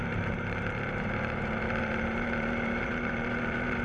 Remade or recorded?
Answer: remade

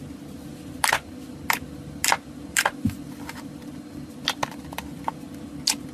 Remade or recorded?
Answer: recorded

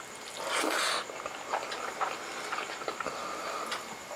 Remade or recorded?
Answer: recorded